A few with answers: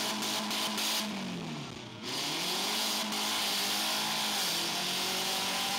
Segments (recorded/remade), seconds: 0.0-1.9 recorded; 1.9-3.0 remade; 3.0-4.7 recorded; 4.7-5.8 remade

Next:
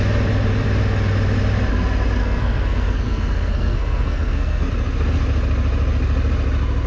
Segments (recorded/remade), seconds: 0.0-2.2 recorded; 2.2-4.7 remade; 4.7-6.9 recorded

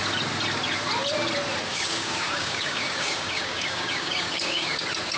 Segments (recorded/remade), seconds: 0.0-1.7 recorded; 1.7-4.8 remade; 4.8-5.2 recorded